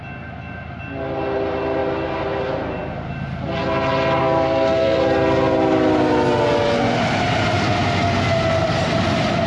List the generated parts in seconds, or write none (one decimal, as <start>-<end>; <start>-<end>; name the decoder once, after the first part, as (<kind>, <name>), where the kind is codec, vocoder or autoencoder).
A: 4.2-5.0 (codec, SNAC)